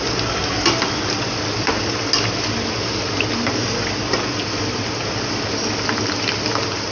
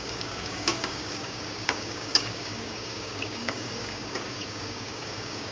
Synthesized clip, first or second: second